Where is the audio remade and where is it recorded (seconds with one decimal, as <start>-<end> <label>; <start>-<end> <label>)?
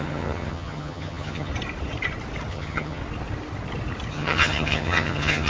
0.0-1.5 remade; 1.5-2.5 recorded; 2.5-3.0 remade; 3.0-4.1 recorded; 4.1-5.5 remade